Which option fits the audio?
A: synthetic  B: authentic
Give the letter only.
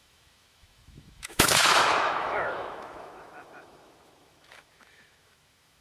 A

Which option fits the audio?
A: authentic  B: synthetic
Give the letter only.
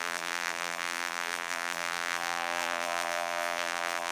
B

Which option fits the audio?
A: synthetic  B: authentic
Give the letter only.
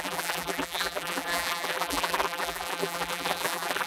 A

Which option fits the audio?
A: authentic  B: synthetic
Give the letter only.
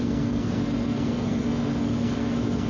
B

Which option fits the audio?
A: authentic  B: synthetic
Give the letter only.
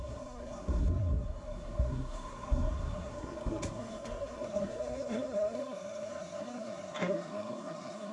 B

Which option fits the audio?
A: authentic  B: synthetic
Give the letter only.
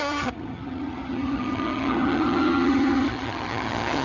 B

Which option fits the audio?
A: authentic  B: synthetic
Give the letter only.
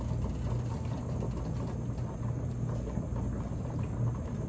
A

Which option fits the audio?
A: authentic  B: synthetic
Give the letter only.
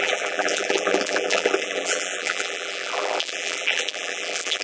B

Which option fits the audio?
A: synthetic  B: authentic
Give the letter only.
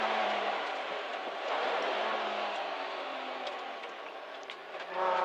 A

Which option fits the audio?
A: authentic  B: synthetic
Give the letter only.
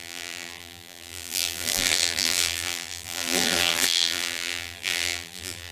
B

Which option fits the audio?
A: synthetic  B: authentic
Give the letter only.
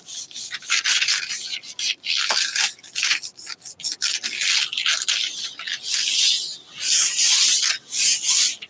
B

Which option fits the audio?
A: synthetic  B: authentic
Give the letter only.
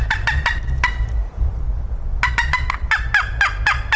B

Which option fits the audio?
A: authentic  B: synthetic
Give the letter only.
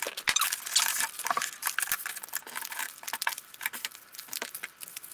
A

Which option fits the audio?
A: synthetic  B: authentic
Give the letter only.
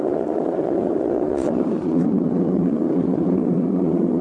A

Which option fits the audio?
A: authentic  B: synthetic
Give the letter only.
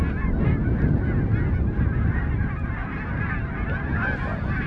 A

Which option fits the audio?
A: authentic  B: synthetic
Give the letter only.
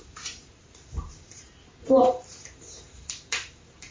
B